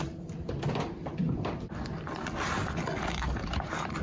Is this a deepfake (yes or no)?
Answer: no